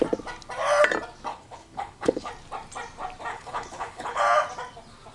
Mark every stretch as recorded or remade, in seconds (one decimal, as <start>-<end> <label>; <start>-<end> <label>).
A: 0.0-1.3 recorded; 1.3-2.3 remade; 2.3-3.3 recorded; 3.3-4.2 remade; 4.2-5.1 recorded